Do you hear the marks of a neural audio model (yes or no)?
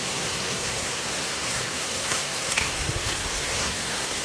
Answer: yes